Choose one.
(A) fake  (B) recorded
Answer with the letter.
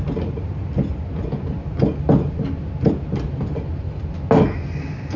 B